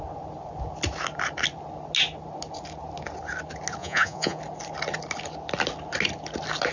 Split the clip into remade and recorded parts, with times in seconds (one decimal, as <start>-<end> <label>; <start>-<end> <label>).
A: 0.0-3.8 recorded; 3.8-4.4 remade; 4.4-6.7 recorded